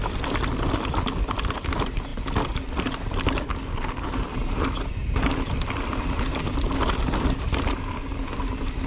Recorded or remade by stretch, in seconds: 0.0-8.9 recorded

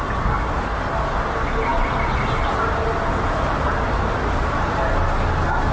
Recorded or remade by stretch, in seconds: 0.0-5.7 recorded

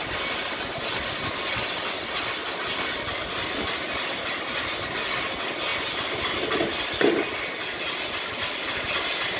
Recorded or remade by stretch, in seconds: 0.0-9.4 recorded

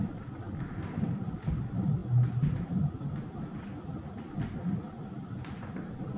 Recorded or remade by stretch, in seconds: 0.0-6.2 recorded

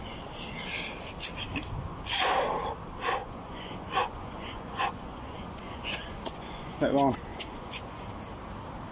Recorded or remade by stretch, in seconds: 0.0-3.2 recorded; 3.2-6.8 remade; 6.8-7.3 recorded; 7.3-8.1 remade; 8.1-8.9 recorded

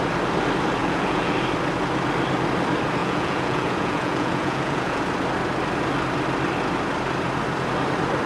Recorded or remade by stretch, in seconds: 0.0-0.8 recorded; 0.8-1.3 remade; 1.3-3.0 recorded; 3.0-5.0 remade; 5.0-8.3 recorded

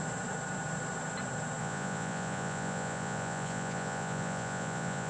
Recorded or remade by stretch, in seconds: 0.0-1.6 recorded; 1.6-5.1 remade

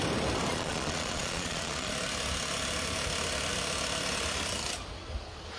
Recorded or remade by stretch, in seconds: 0.0-0.5 recorded; 0.5-1.9 remade; 1.9-5.6 recorded